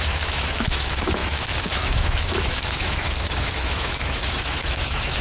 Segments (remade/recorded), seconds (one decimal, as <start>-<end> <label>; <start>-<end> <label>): 0.0-5.2 remade